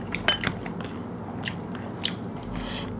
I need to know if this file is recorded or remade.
recorded